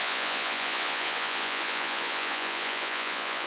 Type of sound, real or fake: fake